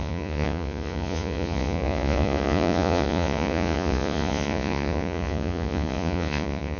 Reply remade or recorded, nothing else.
remade